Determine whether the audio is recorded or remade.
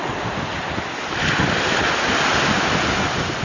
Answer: recorded